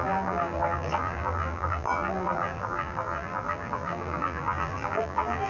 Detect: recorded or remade remade